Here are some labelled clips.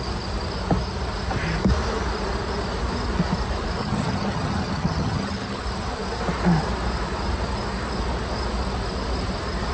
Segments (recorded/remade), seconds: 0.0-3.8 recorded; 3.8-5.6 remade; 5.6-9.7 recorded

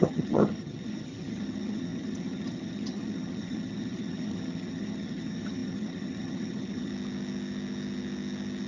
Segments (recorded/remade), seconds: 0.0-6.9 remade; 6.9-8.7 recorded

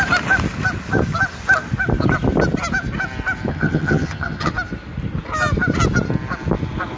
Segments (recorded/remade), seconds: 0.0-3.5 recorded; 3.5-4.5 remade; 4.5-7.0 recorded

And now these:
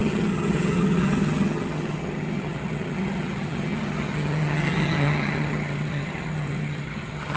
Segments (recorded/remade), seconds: 0.0-7.4 remade

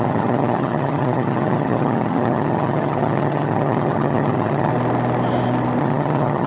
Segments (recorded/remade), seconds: 0.0-4.7 remade; 4.7-5.8 recorded; 5.8-6.5 remade